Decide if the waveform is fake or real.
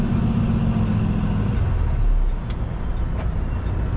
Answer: real